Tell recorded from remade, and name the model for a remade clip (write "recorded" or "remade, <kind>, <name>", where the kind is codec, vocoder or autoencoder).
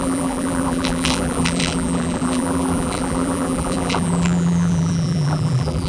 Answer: remade, vocoder, BigVGAN v2